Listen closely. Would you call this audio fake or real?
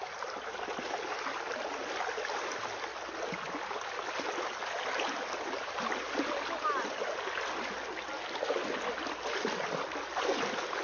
real